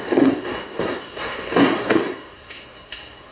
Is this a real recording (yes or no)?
no